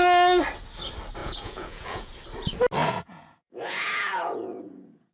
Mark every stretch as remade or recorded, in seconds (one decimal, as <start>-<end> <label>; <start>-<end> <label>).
0.0-1.2 recorded; 1.2-2.1 remade; 2.1-2.8 recorded; 2.8-5.1 remade